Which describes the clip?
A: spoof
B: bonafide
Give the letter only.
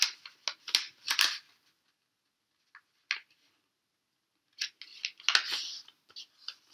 B